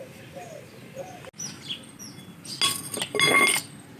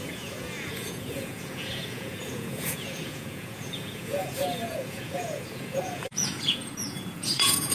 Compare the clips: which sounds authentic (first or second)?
first